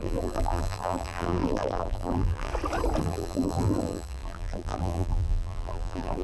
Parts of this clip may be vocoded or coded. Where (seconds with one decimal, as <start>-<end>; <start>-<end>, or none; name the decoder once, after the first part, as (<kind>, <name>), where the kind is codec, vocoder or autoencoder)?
0.0-2.5 (vocoder, BigVGAN v2); 3.0-6.2